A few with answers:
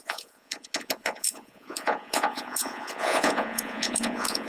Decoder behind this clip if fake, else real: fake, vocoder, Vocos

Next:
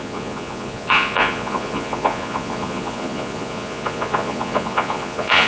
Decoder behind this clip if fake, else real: fake, vocoder, Vocos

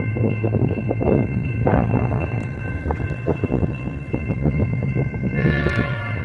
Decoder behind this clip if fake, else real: fake, vocoder, WaveNeXt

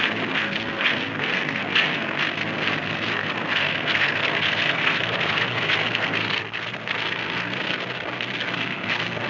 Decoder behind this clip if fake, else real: fake, codec, SNAC